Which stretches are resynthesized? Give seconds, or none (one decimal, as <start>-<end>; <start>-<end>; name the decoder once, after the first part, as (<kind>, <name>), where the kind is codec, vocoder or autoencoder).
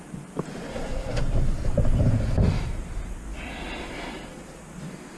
0.7-1.2 (codec, SNAC)